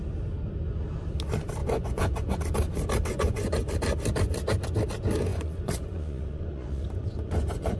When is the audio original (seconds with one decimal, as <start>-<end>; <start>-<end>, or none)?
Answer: 0.0-1.6; 2.4-3.1; 3.6-5.3

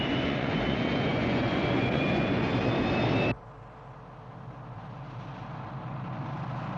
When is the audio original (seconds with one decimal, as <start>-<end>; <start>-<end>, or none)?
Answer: 2.5-6.8

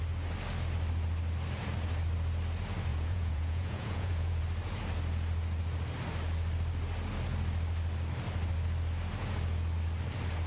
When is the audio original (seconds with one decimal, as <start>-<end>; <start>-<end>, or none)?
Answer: 0.0-2.9; 4.4-10.5

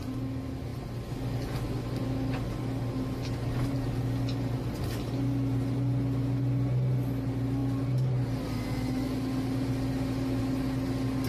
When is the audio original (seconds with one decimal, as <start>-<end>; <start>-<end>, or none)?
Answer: 0.0-11.3

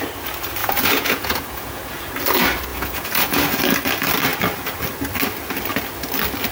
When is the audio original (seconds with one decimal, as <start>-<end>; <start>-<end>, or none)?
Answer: 0.0-0.6; 2.0-2.7; 3.6-6.5

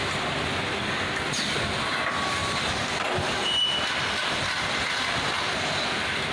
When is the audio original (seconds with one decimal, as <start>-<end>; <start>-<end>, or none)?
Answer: 0.0-6.3

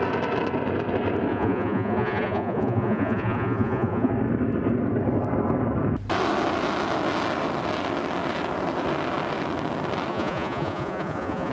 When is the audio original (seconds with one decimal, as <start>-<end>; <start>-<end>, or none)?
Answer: 0.0-1.3; 4.1-10.1